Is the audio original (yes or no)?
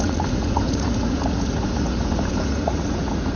no